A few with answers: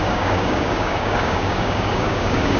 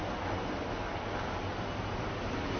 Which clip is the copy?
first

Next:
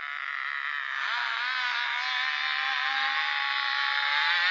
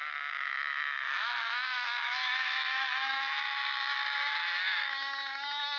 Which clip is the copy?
second